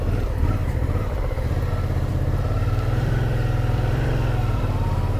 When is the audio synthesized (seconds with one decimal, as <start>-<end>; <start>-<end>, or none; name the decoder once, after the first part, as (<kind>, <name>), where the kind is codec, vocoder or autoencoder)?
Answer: 0.6-1.7 (vocoder, BigVGAN v2); 2.1-4.6